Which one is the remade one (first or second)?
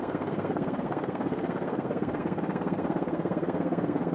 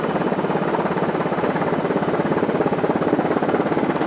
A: first